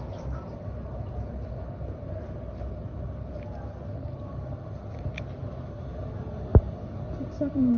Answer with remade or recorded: recorded